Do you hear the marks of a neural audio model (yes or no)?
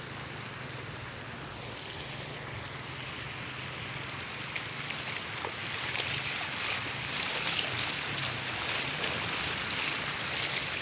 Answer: no